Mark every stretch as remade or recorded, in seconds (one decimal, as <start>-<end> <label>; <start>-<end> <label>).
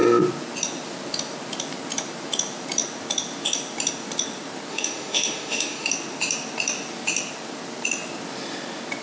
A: 0.0-4.7 recorded; 4.7-5.9 remade; 5.9-9.0 recorded